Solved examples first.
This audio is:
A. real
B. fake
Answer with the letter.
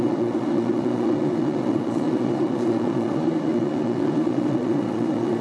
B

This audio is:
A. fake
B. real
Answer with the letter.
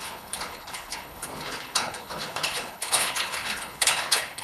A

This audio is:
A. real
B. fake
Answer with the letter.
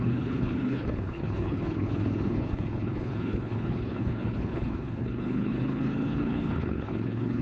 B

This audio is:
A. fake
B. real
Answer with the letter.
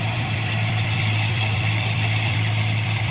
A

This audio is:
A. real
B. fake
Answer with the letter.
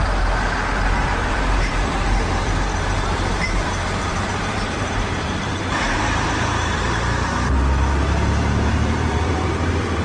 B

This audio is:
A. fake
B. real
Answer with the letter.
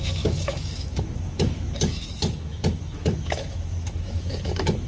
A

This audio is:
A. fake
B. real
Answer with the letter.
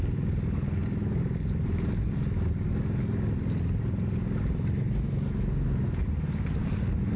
B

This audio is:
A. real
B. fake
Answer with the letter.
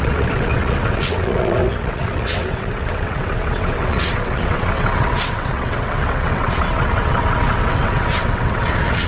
B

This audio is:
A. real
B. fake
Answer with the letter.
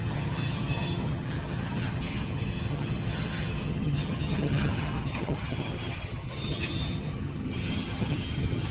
B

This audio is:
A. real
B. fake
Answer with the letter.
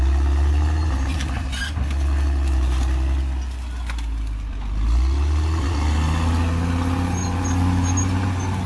A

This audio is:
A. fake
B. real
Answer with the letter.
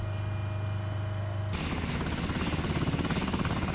B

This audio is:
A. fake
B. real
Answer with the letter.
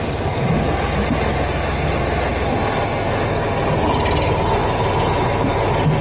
B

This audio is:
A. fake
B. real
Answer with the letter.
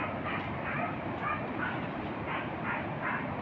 B